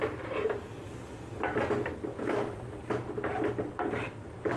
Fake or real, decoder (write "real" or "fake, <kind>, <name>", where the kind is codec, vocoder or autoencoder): real